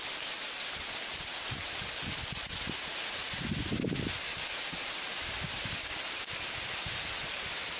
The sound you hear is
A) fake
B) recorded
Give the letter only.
B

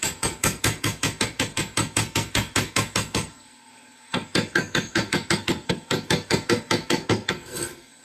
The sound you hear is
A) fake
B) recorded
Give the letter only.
A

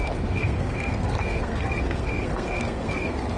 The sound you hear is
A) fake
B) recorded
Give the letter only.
A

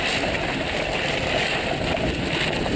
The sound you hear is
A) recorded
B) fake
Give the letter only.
A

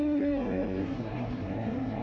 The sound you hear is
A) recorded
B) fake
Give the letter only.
B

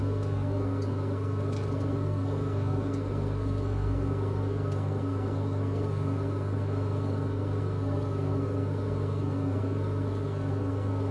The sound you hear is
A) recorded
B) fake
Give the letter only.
B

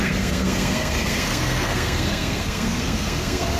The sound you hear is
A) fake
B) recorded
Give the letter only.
A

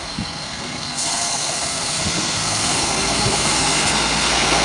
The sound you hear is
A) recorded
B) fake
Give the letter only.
B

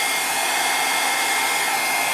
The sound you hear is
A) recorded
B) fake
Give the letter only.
A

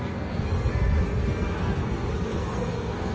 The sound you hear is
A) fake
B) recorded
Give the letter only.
A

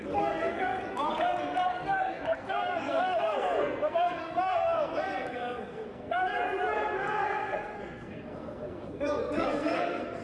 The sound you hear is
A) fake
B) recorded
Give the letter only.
A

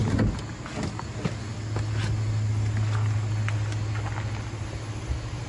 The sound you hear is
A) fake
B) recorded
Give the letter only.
B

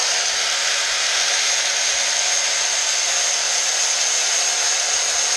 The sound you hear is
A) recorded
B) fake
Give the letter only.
A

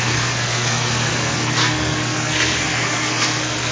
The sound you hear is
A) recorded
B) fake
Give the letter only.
B